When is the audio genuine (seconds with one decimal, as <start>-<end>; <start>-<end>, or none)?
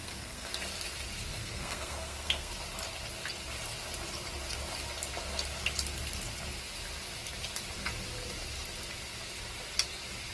0.5-1.3; 2.5-10.3